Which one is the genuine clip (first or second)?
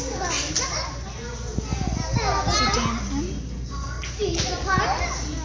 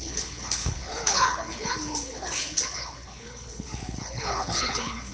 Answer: first